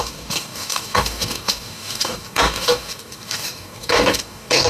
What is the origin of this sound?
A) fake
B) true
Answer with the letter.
A